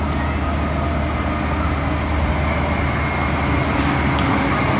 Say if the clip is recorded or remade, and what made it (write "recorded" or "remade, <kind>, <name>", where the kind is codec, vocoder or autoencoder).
recorded